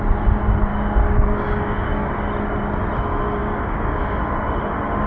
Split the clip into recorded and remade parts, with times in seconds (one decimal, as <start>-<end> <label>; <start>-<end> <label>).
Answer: 0.0-0.7 recorded; 0.7-2.1 remade; 2.1-3.4 recorded; 3.4-4.2 remade; 4.2-5.1 recorded